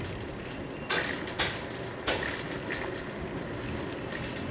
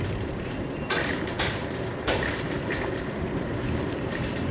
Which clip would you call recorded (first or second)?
first